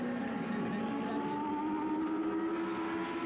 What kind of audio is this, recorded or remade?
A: recorded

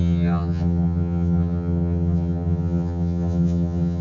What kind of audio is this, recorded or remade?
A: remade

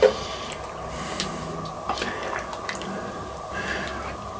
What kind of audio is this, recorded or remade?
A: recorded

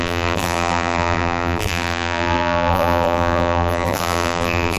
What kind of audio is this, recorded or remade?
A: remade